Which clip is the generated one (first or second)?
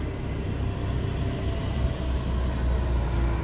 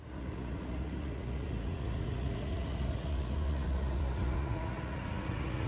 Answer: second